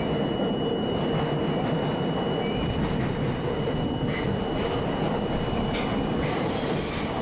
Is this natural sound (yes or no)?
yes